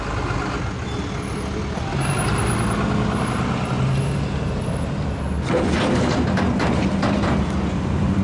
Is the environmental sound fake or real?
real